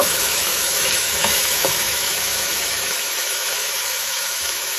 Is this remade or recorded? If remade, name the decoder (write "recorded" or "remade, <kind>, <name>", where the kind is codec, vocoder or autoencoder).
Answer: remade, autoencoder, DAC-VAE